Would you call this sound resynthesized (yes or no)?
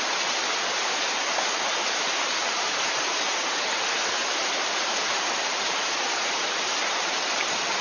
yes